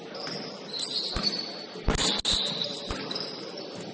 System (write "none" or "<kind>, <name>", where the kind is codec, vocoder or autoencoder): none